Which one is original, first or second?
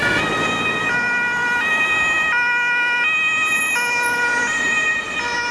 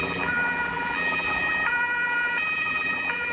first